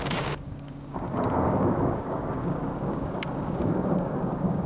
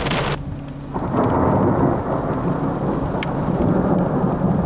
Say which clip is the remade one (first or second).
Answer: first